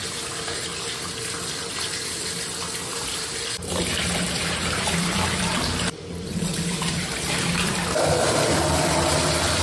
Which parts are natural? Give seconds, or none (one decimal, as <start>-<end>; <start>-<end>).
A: 0.6-2.9; 7.7-9.6